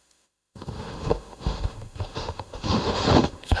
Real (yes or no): no